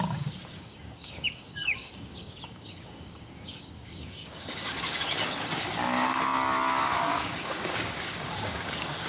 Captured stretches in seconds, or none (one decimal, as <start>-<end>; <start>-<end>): none